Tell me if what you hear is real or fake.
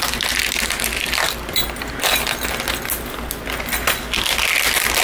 real